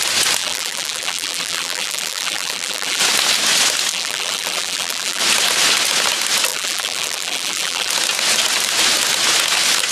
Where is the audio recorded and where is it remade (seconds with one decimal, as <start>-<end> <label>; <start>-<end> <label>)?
0.0-0.4 recorded; 0.4-3.0 remade; 3.0-3.9 recorded; 3.9-5.2 remade; 5.2-6.5 recorded; 6.5-7.9 remade; 7.9-9.9 recorded